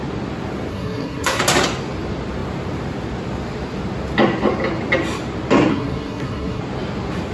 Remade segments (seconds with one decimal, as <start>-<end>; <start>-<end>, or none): 0.7-1.4; 5.7-6.6